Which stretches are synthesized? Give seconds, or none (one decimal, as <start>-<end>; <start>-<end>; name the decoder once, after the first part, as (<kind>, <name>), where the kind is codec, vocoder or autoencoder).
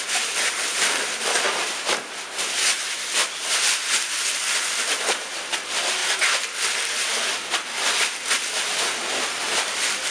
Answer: 2.6-3.1 (autoencoder, DAC-VAE)